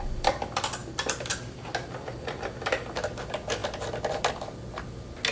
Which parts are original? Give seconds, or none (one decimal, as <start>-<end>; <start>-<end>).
0.0-5.3